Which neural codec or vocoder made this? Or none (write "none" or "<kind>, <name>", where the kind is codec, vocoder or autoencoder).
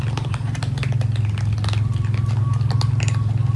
none